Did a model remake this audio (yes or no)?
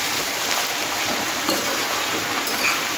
yes